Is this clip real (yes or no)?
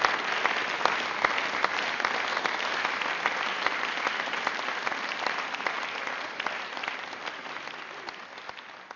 yes